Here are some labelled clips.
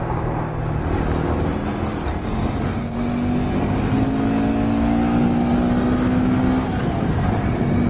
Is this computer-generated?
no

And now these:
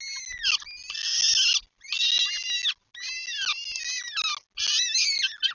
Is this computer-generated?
no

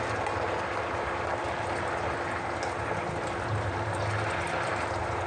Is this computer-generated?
no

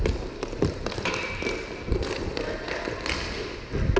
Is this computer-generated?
no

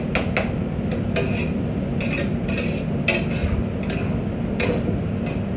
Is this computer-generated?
no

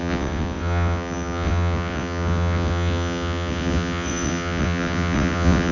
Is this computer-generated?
yes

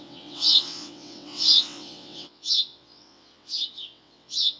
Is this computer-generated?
yes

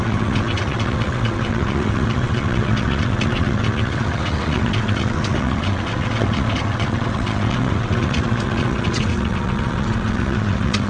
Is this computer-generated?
yes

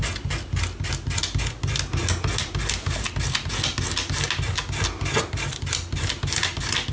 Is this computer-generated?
no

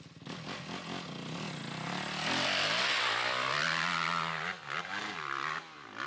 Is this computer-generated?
no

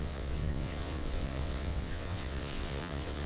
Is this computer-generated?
yes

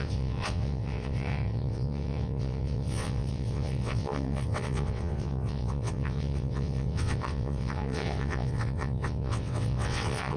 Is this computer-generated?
yes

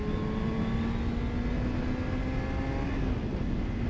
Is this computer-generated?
no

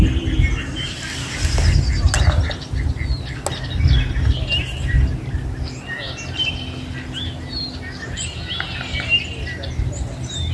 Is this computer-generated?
no